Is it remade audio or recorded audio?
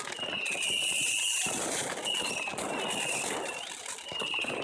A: recorded